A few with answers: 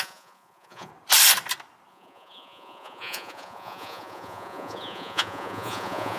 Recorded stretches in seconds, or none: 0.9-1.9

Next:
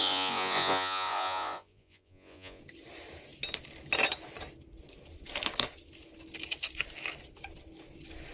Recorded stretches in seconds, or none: 2.6-8.3

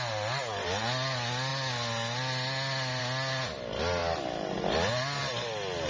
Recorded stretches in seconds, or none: 0.0-5.9

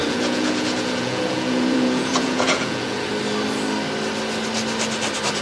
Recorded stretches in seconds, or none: 3.1-5.4

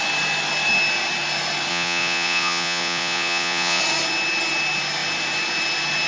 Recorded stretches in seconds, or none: 0.0-1.7; 3.8-6.1

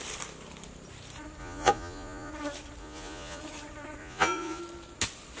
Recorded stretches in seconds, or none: 0.0-1.4; 2.3-2.8; 3.4-4.0; 4.6-5.4

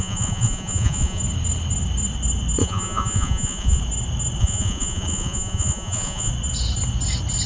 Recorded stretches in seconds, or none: 1.2-2.6; 3.8-4.4; 6.3-7.5

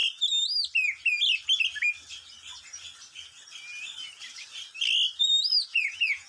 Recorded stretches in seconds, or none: 0.0-5.7